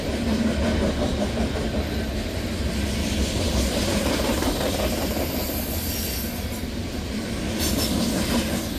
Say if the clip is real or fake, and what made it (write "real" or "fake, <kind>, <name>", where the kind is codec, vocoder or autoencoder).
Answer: real